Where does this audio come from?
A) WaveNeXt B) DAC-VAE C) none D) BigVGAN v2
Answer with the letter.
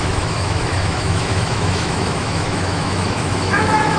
B